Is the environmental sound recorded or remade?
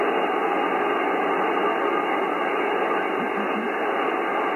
recorded